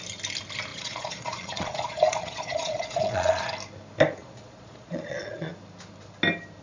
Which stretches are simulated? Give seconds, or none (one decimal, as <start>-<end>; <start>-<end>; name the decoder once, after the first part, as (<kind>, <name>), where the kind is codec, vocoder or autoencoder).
0.7-3.5 (vocoder, Vocos); 4.2-5.5